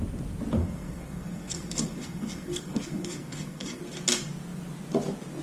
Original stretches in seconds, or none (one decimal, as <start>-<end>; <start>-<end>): 0.0-0.6; 3.8-5.4